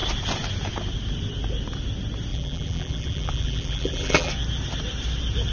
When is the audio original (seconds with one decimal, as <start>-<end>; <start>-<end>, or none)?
0.0-2.3; 4.3-5.5